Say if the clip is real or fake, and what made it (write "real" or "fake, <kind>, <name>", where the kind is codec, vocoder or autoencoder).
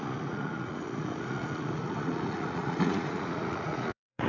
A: fake, vocoder, Vocos